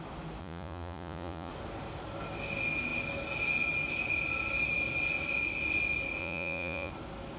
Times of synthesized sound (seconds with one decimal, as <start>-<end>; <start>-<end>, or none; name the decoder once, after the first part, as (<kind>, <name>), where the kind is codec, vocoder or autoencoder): 0.4-1.5 (vocoder, Vocos); 6.2-6.9